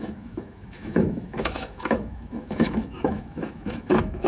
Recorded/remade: remade